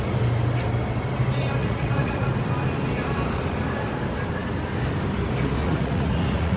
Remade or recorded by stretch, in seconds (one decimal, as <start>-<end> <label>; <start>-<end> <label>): 0.0-1.6 recorded; 1.6-2.3 remade; 2.3-5.6 recorded; 5.6-6.6 remade